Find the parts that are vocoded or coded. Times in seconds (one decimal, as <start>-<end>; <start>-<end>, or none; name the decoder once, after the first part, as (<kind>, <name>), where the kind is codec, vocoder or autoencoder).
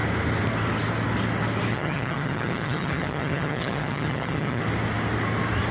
1.7-4.6 (vocoder, HiFi-GAN)